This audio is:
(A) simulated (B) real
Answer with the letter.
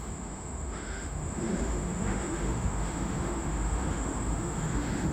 A